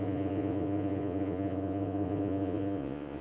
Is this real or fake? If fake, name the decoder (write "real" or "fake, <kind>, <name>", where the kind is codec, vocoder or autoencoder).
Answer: fake, vocoder, Vocos